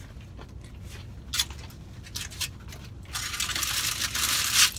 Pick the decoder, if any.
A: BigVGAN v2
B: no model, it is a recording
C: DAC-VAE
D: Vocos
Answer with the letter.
B